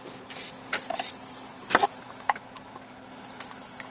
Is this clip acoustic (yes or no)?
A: yes